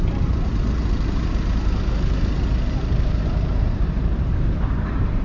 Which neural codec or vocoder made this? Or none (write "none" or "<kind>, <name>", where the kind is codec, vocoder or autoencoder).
vocoder, BigVGAN v2